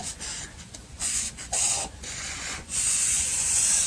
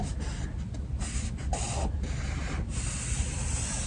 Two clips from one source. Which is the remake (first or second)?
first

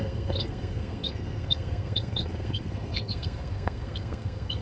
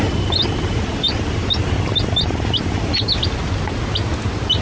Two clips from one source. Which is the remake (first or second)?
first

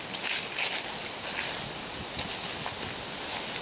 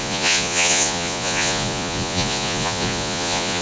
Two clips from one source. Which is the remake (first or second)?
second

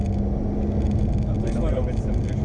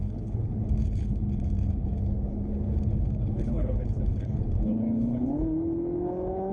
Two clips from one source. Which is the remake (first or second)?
second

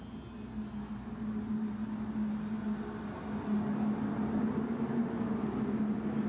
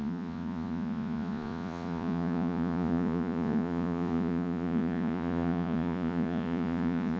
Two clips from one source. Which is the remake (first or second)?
second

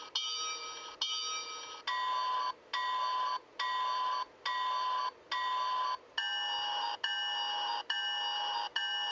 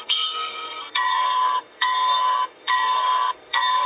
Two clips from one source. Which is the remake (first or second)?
second